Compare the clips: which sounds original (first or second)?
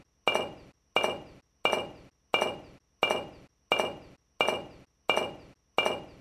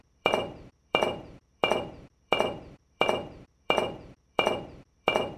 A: first